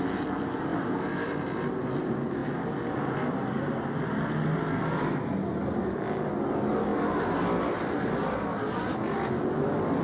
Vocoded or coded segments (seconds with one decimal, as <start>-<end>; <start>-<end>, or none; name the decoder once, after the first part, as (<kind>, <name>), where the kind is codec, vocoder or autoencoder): none